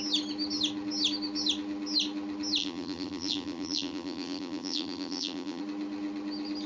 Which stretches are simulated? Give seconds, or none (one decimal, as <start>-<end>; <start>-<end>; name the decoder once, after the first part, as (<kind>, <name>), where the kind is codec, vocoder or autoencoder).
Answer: 2.6-5.6 (vocoder, BigVGAN v2)